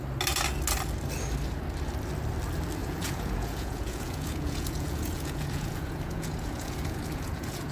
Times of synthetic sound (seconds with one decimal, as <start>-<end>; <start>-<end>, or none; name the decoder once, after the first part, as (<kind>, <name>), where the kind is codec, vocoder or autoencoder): 2.8-7.7 (vocoder, Vocos)